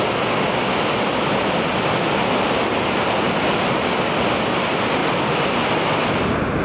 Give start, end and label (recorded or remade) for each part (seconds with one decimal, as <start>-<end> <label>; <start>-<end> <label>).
0.0-5.0 recorded; 5.0-5.6 remade; 5.6-6.6 recorded

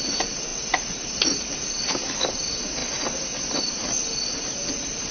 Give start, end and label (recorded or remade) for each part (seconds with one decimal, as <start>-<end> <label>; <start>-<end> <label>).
0.0-5.1 recorded

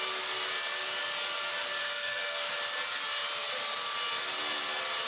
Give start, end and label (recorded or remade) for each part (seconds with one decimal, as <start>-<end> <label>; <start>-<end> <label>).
0.0-1.8 recorded; 1.8-2.5 remade; 2.5-5.1 recorded

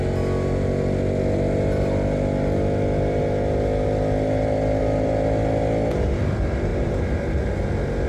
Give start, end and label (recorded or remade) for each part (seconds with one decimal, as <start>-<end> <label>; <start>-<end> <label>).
0.0-6.7 recorded; 6.7-7.5 remade; 7.5-8.1 recorded